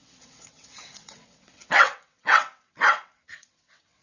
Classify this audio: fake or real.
fake